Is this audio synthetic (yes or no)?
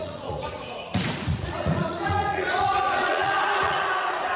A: yes